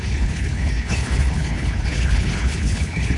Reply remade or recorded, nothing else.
remade